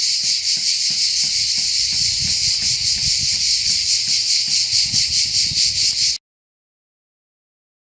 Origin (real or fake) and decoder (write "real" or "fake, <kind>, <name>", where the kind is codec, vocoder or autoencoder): real